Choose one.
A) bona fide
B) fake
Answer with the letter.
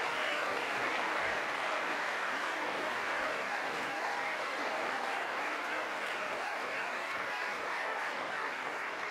B